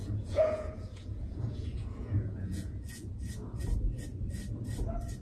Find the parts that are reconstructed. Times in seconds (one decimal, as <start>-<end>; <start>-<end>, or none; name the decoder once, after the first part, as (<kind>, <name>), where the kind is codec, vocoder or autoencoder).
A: 0.0-3.1 (vocoder, Vocos)